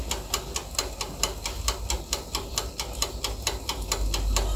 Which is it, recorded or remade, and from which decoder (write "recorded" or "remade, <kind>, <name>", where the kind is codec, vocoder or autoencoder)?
recorded